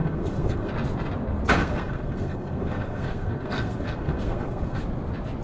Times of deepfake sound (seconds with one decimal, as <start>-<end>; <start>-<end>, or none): 0.0-0.7; 1.6-4.8